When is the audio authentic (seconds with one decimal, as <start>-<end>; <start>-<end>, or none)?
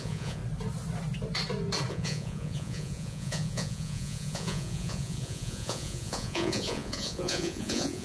0.4-1.9